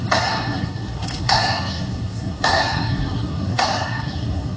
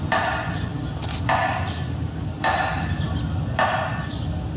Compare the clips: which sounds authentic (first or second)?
second